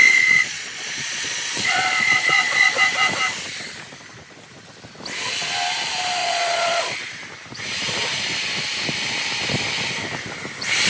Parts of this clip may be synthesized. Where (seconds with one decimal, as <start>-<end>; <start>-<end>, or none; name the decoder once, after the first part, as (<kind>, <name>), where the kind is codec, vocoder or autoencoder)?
0.0-2.8 (vocoder, Vocos); 6.2-7.1